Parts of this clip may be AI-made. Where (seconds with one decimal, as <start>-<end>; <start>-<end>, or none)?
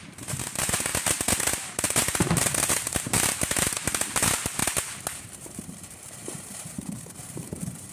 0.0-0.9; 1.5-4.6; 5.2-7.9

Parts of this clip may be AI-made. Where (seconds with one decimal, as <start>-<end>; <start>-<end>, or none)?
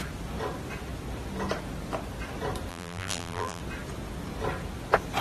2.7-3.6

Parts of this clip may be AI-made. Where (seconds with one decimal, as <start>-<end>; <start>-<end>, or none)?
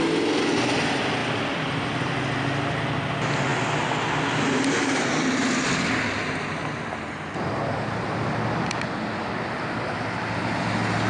1.2-2.8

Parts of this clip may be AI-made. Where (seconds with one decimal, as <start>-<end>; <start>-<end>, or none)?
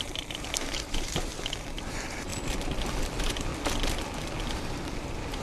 0.0-1.3; 1.9-2.3; 3.0-3.5; 4.4-5.4